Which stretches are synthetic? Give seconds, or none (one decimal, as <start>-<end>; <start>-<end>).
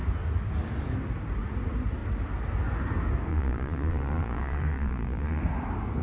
3.3-5.4